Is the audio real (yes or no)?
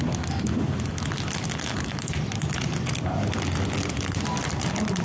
yes